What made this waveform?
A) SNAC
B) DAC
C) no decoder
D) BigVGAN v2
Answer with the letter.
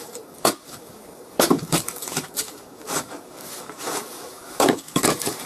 B